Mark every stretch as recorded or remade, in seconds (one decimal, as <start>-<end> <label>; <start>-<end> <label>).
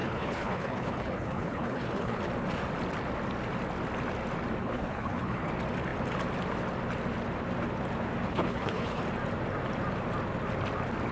0.0-2.2 remade; 2.2-4.6 recorded; 4.6-5.5 remade; 5.5-8.3 recorded; 8.3-9.0 remade; 9.0-11.1 recorded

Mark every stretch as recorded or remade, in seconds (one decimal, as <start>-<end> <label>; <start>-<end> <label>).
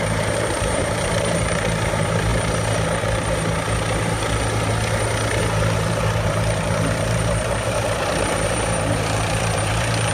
0.0-2.3 remade; 2.3-5.4 recorded; 5.4-10.1 remade